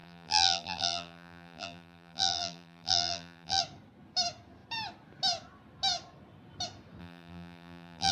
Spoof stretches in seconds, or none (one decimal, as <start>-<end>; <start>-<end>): 0.0-3.6; 7.0-8.1